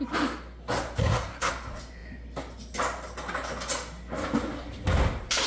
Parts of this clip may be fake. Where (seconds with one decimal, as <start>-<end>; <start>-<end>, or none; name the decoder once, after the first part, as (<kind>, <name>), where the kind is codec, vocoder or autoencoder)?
1.0-1.5 (codec, SNAC)